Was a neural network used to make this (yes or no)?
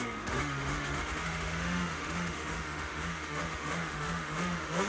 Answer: yes